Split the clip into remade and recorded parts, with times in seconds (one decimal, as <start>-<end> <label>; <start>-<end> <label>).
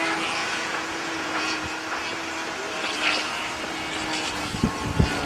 0.0-0.4 recorded; 0.4-1.6 remade; 1.6-5.3 recorded